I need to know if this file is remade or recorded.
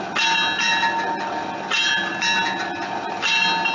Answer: recorded